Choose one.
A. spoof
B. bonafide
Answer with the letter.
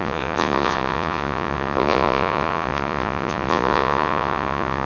A